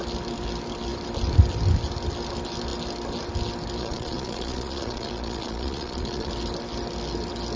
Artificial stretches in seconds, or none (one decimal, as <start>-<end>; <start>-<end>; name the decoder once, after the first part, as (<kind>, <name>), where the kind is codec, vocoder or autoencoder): 3.8-6.3 (vocoder, Vocos)